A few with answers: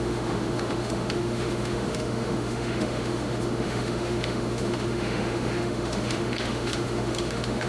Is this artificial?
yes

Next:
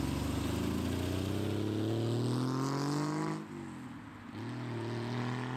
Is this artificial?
no